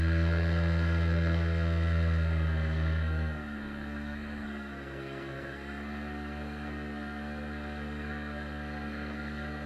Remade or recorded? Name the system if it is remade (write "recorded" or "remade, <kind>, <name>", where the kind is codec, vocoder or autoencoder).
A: remade, codec, SNAC